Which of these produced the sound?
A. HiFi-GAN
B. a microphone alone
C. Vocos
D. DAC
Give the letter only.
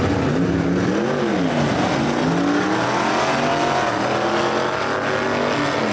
B